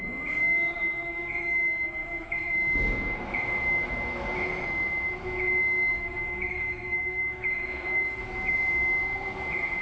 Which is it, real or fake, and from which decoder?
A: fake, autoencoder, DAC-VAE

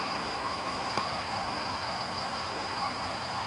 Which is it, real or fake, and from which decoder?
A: fake, codec, SNAC